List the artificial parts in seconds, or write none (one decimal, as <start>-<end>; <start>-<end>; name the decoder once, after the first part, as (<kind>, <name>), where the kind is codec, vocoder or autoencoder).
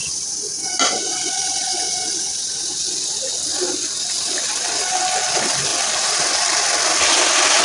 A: none